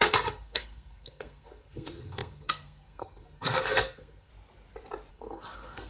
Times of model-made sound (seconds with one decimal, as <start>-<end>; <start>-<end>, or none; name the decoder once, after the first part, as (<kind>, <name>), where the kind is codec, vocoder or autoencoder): 0.0-4.3 (codec, SNAC); 5.1-5.9